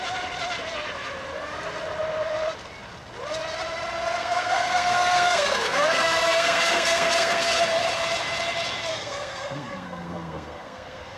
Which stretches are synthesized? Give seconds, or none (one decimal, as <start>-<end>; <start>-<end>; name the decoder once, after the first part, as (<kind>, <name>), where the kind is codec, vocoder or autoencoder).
4.2-7.6 (codec, SNAC); 8.9-11.2